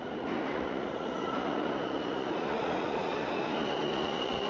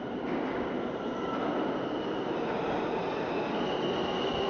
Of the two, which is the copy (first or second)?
first